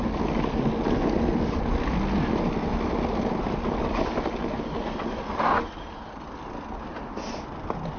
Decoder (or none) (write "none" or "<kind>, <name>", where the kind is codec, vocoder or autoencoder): none